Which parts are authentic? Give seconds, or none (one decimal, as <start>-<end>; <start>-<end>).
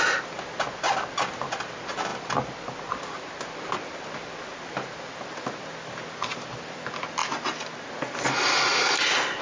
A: 0.0-9.4